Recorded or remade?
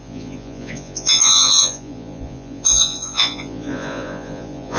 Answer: remade